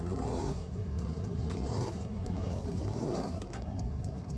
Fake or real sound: fake